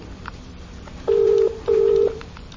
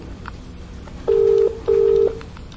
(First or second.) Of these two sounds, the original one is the second